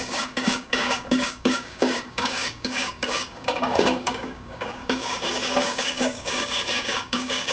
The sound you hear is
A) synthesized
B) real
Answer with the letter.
A